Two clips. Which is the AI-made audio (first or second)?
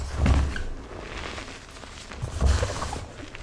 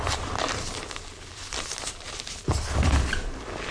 second